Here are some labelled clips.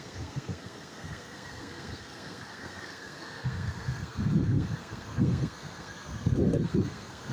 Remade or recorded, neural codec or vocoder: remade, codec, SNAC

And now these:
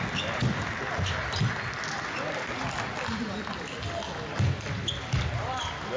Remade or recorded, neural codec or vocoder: recorded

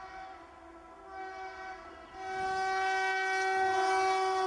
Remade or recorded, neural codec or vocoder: recorded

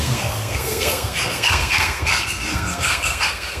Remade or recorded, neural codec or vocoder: remade, codec, SNAC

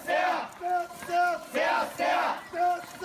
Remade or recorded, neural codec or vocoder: recorded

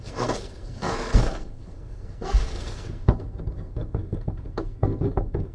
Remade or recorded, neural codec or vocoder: remade, codec, SNAC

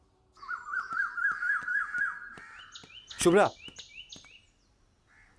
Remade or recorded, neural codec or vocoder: recorded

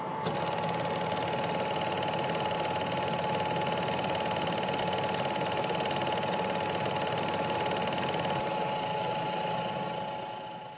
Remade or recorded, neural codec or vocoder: recorded